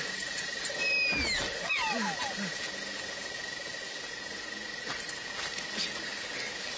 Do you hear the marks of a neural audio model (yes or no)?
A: no